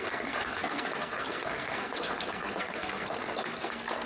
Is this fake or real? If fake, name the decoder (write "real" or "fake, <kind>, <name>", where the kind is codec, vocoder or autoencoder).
fake, codec, SNAC